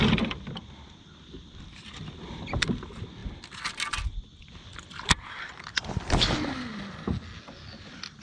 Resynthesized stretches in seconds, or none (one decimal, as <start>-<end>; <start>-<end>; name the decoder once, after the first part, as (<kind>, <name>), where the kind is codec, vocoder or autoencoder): none